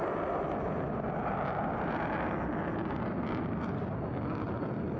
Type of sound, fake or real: real